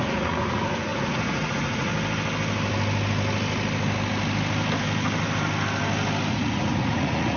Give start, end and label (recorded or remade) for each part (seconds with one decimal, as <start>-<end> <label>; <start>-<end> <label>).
0.0-1.9 remade; 1.9-6.3 recorded; 6.3-7.4 remade